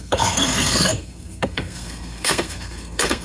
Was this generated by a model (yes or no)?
yes